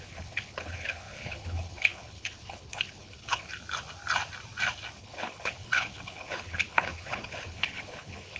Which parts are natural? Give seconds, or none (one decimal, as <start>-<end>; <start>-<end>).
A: 3.5-5.0